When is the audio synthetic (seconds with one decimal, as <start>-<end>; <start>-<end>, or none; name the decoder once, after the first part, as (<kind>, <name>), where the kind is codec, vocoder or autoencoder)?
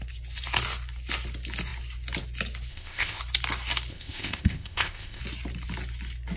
2.7-3.2 (codec, ZipCodec); 3.9-5.2